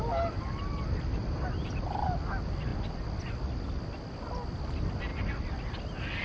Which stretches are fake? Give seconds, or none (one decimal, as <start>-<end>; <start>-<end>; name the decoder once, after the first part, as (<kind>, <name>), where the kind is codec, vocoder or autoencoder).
1.2-2.0 (vocoder, BigVGAN v2)